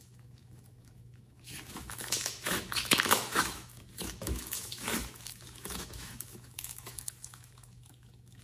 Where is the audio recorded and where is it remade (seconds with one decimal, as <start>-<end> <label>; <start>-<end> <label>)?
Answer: 0.0-8.4 remade